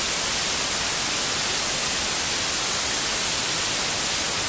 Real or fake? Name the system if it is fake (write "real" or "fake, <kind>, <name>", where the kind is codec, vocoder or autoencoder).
real